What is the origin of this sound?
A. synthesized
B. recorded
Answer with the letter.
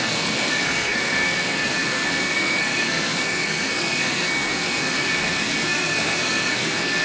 A